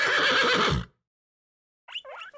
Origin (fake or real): real